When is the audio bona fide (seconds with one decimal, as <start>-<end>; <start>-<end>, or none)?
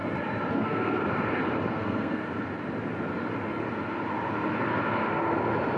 0.0-0.5; 1.0-1.7; 2.2-5.8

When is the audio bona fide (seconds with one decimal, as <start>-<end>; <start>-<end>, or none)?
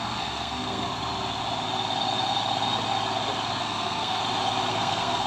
0.9-3.6; 4.2-4.7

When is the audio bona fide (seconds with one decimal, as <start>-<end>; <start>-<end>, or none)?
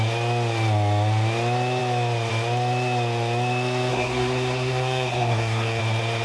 0.0-3.9; 5.8-6.2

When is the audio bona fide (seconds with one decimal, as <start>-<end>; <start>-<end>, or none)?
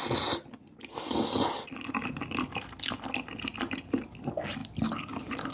0.0-5.5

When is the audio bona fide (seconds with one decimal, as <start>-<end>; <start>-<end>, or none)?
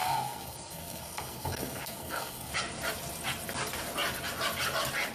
2.5-5.1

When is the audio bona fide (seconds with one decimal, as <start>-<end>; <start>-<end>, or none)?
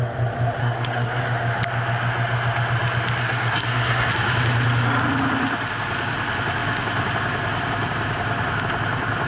0.0-0.6; 1.2-3.2; 4.1-9.3